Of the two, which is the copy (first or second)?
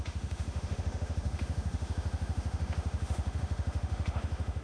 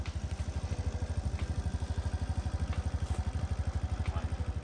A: first